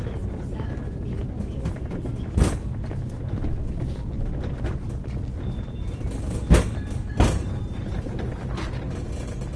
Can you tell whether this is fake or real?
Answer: real